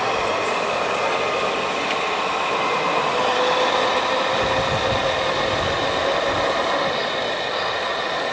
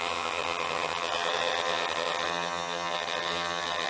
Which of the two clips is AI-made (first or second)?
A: second